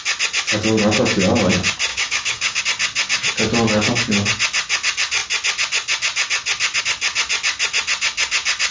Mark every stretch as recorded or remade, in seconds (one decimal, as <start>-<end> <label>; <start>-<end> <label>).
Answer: 0.0-1.9 recorded; 1.9-2.6 remade; 2.6-8.7 recorded